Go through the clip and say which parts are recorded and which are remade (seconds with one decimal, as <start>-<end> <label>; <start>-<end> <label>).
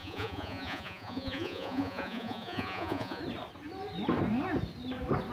0.0-3.2 remade; 3.2-5.3 recorded